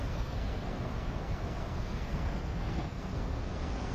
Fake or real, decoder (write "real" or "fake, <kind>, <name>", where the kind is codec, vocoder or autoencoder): fake, codec, SNAC